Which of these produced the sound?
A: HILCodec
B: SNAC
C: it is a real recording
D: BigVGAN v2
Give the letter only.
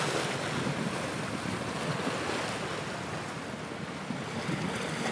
C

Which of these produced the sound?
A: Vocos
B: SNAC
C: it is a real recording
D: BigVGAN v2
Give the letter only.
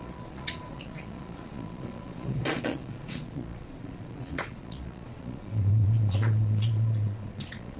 A